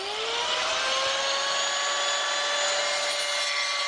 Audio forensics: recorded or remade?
recorded